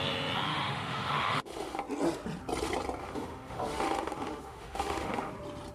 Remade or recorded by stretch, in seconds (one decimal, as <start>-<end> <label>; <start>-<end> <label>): 0.0-0.5 recorded; 0.5-1.8 remade; 1.8-3.0 recorded; 3.0-5.3 remade; 5.3-5.7 recorded